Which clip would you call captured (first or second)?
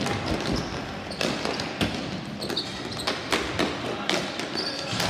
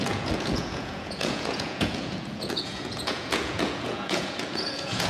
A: first